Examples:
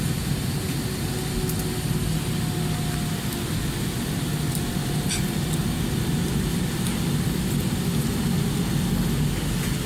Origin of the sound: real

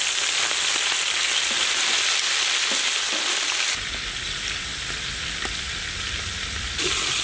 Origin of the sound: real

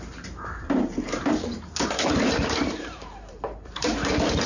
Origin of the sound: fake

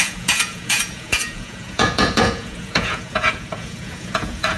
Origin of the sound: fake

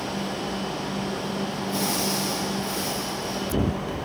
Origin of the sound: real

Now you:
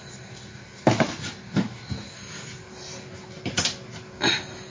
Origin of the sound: real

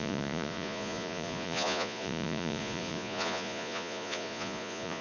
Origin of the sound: fake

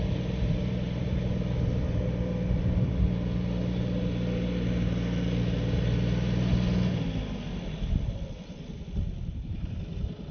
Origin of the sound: real